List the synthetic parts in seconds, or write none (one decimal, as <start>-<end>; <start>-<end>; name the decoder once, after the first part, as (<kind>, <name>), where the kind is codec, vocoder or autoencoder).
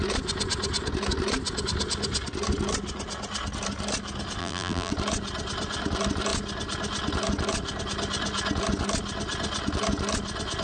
4.4-4.9 (vocoder, BigVGAN v2)